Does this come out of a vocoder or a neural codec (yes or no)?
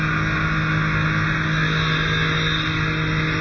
no